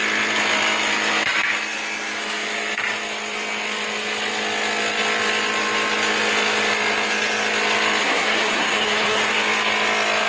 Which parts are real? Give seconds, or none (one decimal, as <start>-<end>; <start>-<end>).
0.0-8.0; 9.3-10.3